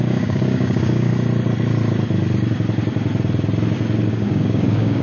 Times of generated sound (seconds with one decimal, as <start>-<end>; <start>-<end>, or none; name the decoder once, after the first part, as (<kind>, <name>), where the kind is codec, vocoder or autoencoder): 0.0-1.1 (codec, DAC); 4.1-5.0